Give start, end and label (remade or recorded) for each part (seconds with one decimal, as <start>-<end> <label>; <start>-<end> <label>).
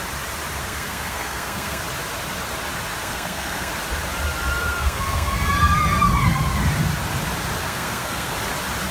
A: 0.0-0.6 recorded; 0.6-1.8 remade; 1.8-3.0 recorded; 3.0-3.7 remade; 3.7-4.6 recorded; 4.6-5.5 remade; 5.5-7.6 recorded; 7.6-8.3 remade; 8.3-8.9 recorded